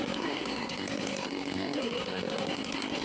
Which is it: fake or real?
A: fake